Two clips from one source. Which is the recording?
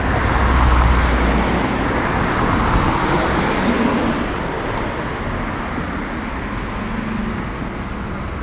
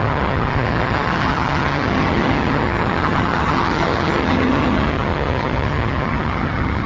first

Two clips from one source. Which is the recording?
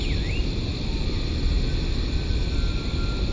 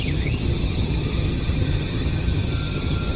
first